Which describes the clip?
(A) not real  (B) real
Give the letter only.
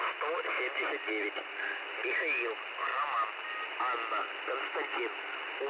B